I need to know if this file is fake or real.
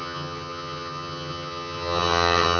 fake